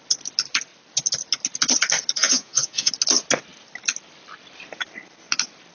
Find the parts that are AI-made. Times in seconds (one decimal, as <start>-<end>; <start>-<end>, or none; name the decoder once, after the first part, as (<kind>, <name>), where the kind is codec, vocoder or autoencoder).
2.2-2.9 (vocoder, Vocos)